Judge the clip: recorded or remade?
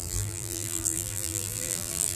remade